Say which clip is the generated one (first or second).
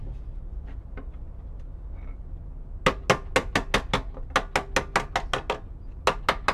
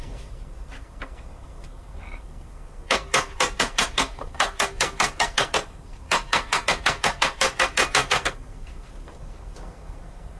second